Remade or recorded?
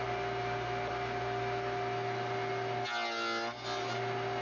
recorded